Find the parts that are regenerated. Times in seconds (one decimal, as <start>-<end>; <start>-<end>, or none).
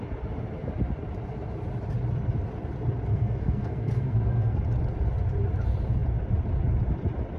3.1-4.6